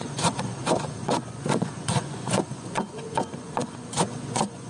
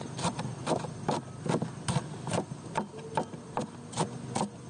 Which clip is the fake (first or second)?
first